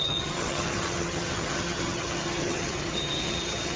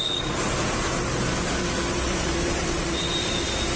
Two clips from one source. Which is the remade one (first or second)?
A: first